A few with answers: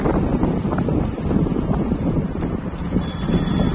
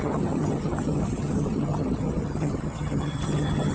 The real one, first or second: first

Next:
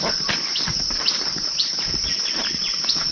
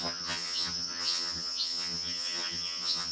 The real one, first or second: first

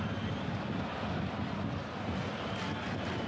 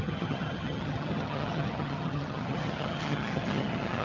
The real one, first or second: first